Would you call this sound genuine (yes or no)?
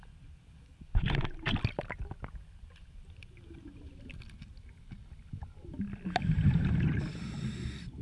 yes